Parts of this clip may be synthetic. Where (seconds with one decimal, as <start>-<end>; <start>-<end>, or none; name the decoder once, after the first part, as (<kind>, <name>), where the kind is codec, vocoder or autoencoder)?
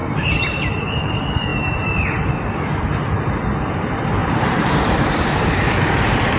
4.2-6.4 (vocoder, BigVGAN v2)